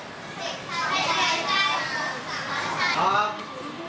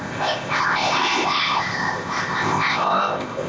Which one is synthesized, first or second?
second